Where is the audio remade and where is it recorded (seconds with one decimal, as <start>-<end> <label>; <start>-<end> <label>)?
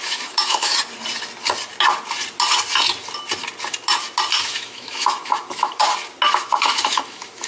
0.0-0.7 remade; 0.7-4.4 recorded; 4.4-5.8 remade; 5.8-6.3 recorded; 6.3-7.5 remade